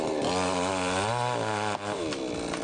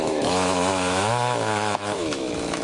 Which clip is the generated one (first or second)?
second